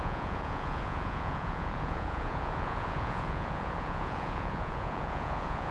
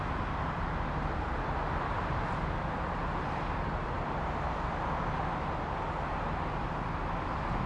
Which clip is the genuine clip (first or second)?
second